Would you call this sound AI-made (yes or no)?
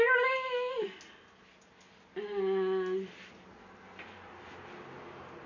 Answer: no